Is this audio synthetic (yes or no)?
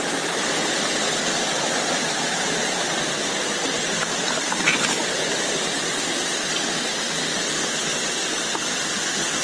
no